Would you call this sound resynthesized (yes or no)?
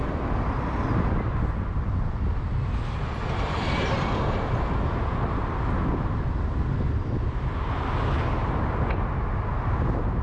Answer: no